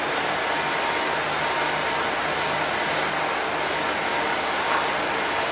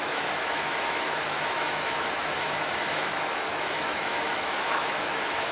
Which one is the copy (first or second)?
second